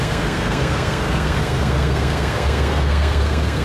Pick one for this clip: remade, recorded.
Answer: remade